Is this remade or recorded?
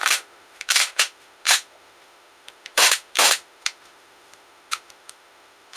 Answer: remade